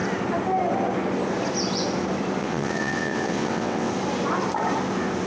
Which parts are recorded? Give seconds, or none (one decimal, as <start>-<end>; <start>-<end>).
0.0-2.4; 3.9-5.3